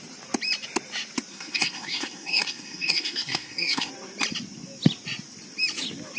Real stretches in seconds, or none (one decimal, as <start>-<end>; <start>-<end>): 0.0-1.3; 3.9-6.2